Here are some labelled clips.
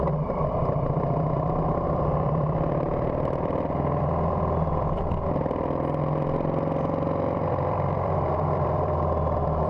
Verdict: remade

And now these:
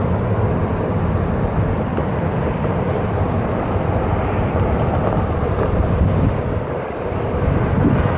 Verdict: remade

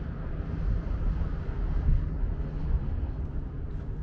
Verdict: recorded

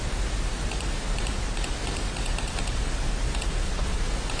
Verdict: remade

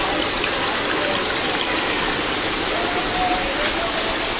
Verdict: recorded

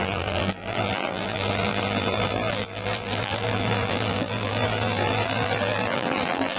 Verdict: remade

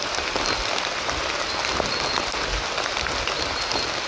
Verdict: recorded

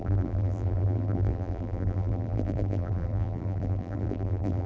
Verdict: remade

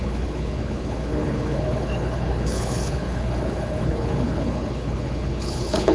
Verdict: remade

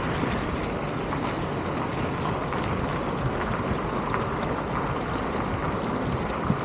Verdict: recorded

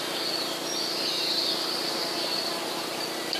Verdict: recorded